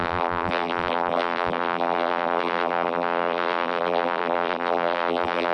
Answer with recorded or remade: remade